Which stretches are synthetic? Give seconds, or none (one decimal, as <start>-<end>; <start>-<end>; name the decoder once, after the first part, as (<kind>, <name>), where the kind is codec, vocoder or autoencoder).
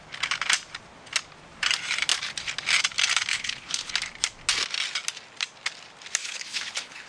3.3-3.9 (codec, HILCodec); 6.2-7.1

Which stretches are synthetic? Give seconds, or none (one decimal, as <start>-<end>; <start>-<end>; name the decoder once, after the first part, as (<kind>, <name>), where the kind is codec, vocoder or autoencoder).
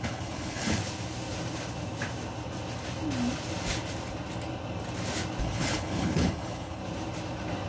0.0-0.8 (codec, HILCodec); 5.4-6.8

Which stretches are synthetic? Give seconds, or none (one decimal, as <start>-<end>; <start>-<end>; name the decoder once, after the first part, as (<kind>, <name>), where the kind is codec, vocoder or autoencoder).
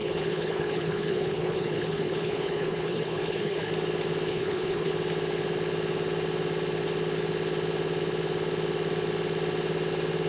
0.0-3.7 (codec, HILCodec); 4.3-4.9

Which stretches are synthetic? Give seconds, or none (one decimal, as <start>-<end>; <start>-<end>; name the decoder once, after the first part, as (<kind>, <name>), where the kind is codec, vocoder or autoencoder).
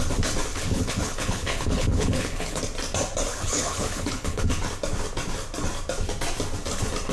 0.5-2.6 (codec, HILCodec); 3.3-4.5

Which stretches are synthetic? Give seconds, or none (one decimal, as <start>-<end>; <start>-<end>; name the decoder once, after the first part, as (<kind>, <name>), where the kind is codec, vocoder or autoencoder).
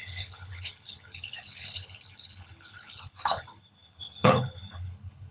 0.0-5.3 (codec, HILCodec)